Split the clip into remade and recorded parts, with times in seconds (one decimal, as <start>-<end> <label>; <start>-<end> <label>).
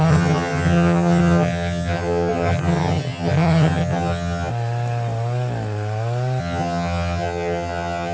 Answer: 0.0-4.5 remade; 4.5-6.4 recorded; 6.4-8.1 remade